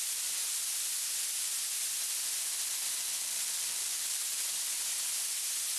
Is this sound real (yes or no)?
yes